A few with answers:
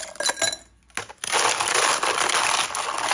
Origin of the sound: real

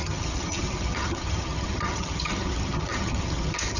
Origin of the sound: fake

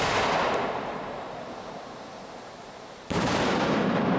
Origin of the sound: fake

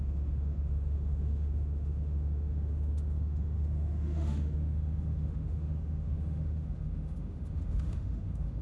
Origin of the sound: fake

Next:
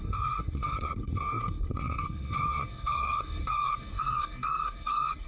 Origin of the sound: fake